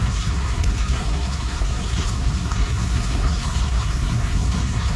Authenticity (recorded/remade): remade